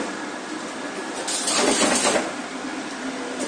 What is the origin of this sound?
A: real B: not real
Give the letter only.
A